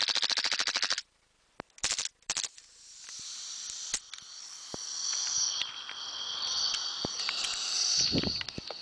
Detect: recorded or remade recorded